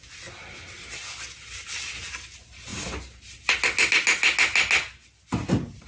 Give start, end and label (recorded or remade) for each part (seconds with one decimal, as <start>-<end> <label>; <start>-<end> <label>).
0.0-5.9 recorded